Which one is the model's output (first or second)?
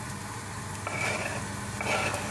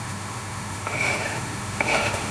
second